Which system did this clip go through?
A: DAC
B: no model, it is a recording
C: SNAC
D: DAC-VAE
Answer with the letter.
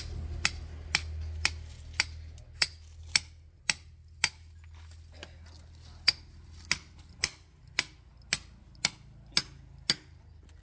B